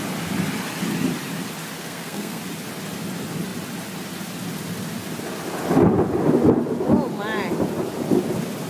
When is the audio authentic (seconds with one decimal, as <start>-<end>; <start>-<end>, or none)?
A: 0.0-1.8; 2.4-8.7